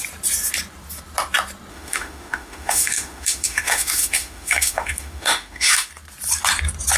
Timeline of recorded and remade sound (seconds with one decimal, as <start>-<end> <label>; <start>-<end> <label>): 0.0-1.7 recorded; 1.7-5.9 remade; 5.9-7.0 recorded